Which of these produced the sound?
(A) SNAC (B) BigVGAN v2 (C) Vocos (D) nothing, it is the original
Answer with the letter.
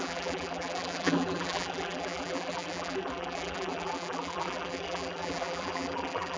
B